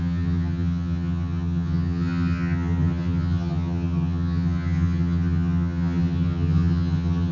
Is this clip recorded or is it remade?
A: remade